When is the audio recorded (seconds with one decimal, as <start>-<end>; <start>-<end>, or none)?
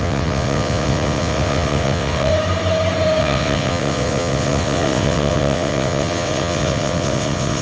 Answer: 2.3-3.2